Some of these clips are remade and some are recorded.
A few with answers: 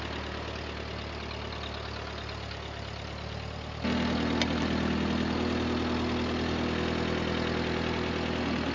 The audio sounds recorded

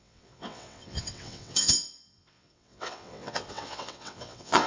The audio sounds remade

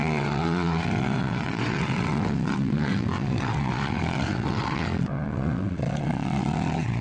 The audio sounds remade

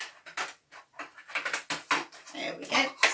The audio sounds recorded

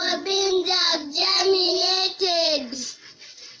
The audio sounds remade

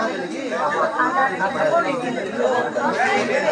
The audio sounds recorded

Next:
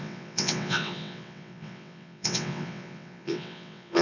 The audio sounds remade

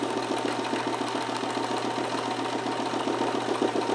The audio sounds recorded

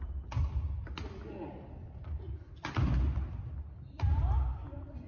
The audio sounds recorded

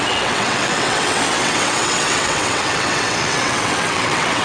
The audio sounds remade